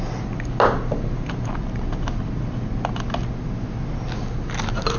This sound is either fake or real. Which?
real